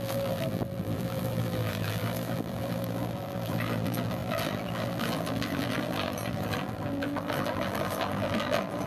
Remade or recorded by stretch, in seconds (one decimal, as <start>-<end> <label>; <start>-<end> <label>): 0.0-8.9 remade